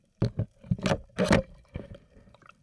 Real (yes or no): yes